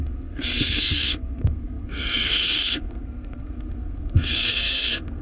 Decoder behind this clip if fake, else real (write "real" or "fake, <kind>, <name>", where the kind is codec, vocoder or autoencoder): fake, codec, SNAC